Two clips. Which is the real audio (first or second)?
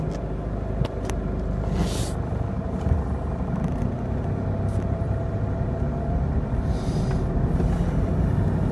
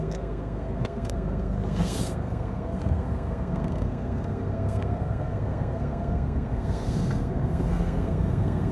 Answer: first